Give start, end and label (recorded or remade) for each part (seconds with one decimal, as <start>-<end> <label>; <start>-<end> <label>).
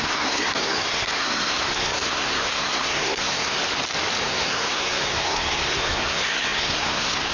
0.0-3.6 remade; 3.6-4.2 recorded; 4.2-7.3 remade